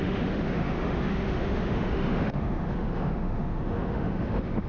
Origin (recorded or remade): remade